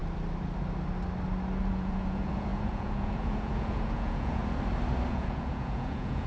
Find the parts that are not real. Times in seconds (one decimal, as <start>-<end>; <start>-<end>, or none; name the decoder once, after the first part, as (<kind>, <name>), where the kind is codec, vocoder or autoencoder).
1.7-4.4 (vocoder, Vocos); 5.1-6.3

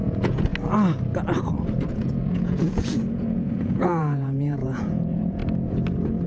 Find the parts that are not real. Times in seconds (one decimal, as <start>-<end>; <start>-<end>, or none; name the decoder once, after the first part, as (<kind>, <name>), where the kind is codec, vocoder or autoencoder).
0.0-0.5 (vocoder, Vocos); 1.9-5.4

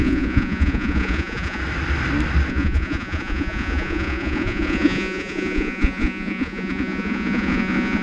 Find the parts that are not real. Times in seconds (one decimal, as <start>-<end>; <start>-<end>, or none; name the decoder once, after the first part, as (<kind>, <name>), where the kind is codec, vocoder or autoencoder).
0.0-1.6 (vocoder, Vocos); 2.5-8.0

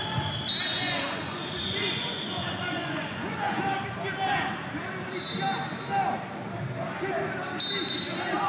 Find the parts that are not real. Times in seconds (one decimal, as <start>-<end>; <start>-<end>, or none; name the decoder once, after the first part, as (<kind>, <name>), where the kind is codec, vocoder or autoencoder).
0.7-3.6 (vocoder, Vocos)

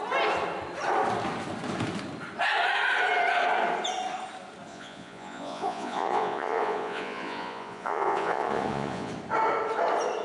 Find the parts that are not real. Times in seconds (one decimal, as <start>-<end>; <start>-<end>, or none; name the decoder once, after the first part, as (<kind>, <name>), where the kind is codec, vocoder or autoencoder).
4.7-9.1 (vocoder, Vocos)

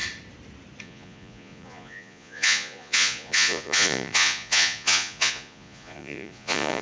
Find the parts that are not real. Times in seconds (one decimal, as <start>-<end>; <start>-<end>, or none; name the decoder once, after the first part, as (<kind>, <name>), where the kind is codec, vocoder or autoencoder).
0.8-6.8 (vocoder, Vocos)

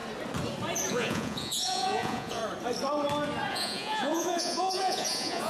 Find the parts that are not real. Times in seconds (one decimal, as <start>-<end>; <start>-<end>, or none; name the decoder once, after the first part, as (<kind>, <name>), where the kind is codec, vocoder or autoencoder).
0.9-2.4 (vocoder, Vocos); 3.5-5.5

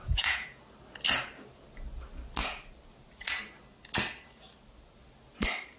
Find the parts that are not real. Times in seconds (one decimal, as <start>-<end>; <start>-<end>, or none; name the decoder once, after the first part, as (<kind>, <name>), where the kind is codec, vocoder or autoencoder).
0.0-0.6 (vocoder, Vocos)